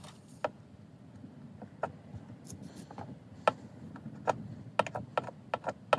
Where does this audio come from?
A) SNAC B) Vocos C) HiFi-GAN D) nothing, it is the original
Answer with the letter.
D